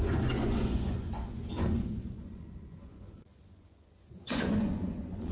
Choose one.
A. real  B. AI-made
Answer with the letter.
B